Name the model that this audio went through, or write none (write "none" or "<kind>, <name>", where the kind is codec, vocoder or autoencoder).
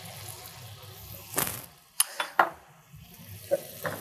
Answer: none